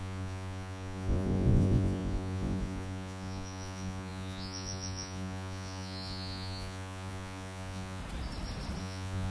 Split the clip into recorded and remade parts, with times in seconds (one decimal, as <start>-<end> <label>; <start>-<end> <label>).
0.0-8.0 remade; 8.0-8.8 recorded; 8.8-9.3 remade